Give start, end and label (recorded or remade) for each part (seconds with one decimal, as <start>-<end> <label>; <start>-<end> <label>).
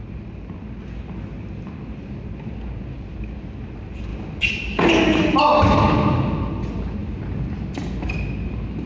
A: 0.0-8.9 recorded